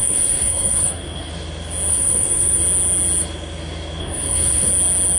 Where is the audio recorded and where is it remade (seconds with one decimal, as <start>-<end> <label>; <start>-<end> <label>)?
0.0-1.3 remade; 1.3-1.9 recorded; 1.9-2.6 remade; 2.6-4.0 recorded; 4.0-4.7 remade; 4.7-5.2 recorded